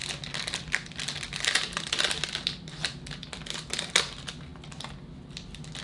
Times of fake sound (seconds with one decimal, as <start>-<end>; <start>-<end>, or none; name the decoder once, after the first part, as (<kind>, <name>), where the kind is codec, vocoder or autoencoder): none